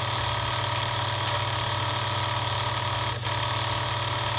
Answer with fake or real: real